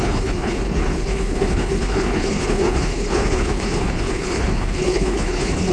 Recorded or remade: remade